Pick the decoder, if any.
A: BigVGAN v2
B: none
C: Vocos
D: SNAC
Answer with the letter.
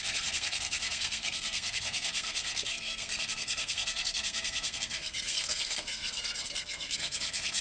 D